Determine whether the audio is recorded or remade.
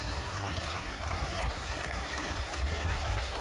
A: remade